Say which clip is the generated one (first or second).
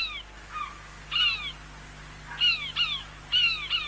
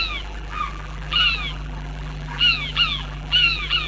second